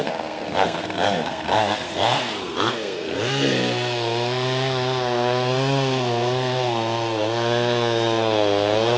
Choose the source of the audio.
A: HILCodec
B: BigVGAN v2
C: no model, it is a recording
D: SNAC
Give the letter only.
D